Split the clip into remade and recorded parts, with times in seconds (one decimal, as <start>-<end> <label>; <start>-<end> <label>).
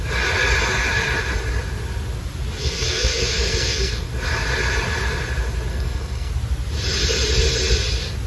0.0-2.6 recorded; 2.6-4.1 remade; 4.1-5.7 recorded; 5.7-6.3 remade; 6.3-8.3 recorded